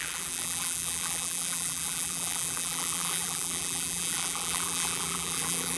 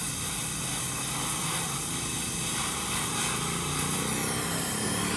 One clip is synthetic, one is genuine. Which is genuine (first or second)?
second